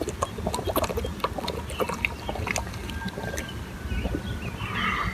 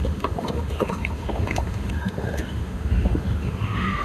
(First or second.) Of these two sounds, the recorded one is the first